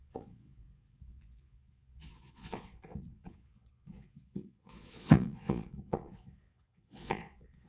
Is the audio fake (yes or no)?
yes